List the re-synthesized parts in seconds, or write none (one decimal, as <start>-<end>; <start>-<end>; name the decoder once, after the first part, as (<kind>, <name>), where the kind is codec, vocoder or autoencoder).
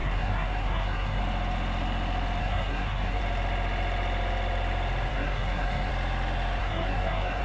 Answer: 0.0-1.2 (codec, SNAC); 2.4-3.2; 5.1-5.9; 6.6-7.4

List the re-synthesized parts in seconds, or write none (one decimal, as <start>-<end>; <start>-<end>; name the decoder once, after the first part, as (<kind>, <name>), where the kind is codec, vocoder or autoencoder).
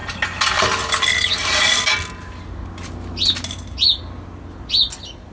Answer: none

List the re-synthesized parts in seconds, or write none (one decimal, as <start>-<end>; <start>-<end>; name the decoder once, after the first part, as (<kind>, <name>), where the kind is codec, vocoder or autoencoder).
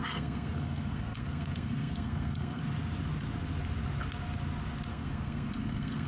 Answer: 0.0-2.6 (codec, SNAC); 4.9-6.1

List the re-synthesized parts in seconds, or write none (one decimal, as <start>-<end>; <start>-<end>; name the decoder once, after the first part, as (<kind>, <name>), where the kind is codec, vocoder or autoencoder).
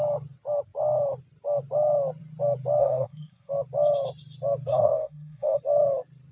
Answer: 2.8-3.5 (codec, SNAC); 4.7-5.6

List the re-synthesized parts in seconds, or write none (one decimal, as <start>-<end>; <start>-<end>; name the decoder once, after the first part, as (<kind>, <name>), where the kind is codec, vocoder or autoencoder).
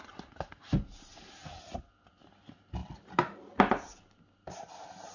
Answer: none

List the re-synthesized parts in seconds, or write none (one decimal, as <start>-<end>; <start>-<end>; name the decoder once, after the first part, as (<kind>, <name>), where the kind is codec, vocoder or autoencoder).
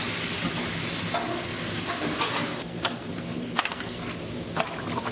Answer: 1.3-4.1 (codec, SNAC)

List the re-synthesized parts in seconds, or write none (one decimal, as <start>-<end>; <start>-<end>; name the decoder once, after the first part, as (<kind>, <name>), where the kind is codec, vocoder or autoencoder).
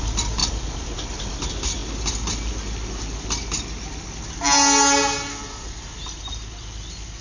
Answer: 5.3-5.8 (codec, SNAC)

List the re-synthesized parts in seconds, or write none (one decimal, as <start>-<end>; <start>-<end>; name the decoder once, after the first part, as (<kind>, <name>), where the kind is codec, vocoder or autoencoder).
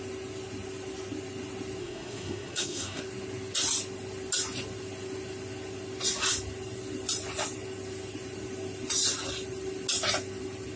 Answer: 1.8-3.0 (codec, SNAC)